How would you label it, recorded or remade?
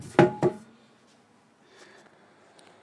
recorded